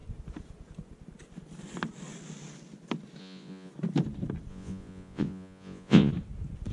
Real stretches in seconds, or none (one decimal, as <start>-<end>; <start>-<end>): 0.0-3.2; 3.7-4.5; 6.1-6.7